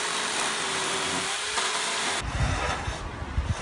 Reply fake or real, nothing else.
real